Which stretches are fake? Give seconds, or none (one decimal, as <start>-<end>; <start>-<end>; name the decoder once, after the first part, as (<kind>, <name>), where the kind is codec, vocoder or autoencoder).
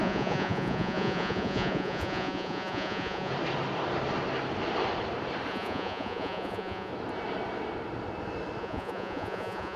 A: 0.0-3.3 (vocoder, Vocos); 5.5-6.9; 8.6-9.8